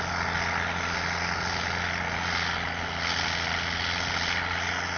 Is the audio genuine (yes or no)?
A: yes